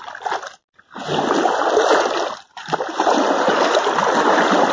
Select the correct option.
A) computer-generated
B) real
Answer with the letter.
B